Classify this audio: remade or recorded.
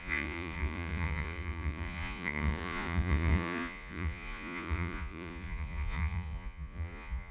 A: remade